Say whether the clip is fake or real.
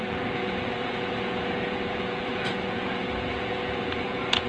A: fake